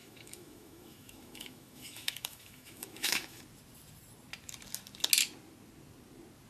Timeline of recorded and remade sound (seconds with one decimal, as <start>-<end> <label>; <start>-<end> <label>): 0.0-3.4 remade; 3.4-6.5 recorded